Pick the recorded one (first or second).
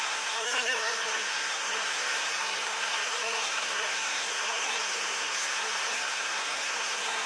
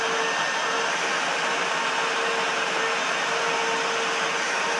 second